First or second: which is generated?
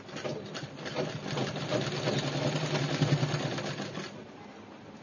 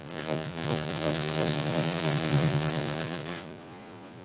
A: second